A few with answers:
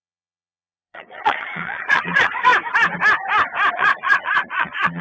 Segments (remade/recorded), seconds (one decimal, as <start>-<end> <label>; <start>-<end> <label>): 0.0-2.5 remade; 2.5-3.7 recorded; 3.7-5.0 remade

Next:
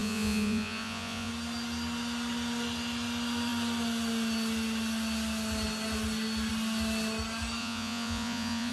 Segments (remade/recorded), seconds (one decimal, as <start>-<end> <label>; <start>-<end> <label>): 0.0-1.3 remade; 1.3-7.6 recorded; 7.6-8.7 remade

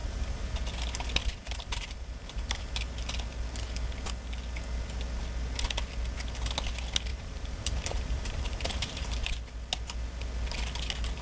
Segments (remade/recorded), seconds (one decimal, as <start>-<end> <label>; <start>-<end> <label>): 0.0-0.6 remade; 0.6-1.2 recorded; 1.2-2.6 remade; 2.6-7.1 recorded; 7.1-9.1 remade; 9.1-11.2 recorded

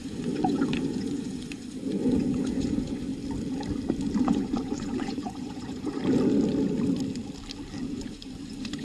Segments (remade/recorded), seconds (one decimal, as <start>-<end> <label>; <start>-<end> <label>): 0.0-3.1 remade; 3.1-4.2 recorded; 4.2-6.0 remade; 6.0-7.9 recorded; 7.9-8.8 remade

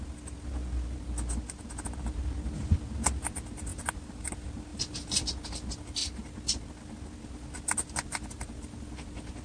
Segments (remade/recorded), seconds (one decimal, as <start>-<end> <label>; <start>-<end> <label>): 0.0-3.7 recorded; 3.7-4.3 remade; 4.3-4.7 recorded; 4.7-5.4 remade; 5.4-9.4 recorded

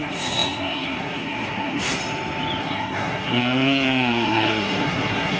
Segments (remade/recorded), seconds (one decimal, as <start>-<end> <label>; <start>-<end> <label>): 0.0-2.0 remade; 2.0-2.6 recorded; 2.6-5.4 remade

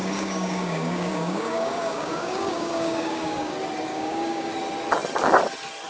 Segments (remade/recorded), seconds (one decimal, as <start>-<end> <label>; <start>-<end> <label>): 0.0-3.5 remade; 3.5-3.9 recorded; 3.9-4.5 remade; 4.5-5.9 recorded